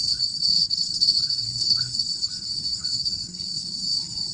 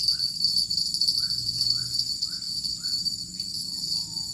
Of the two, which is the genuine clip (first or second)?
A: second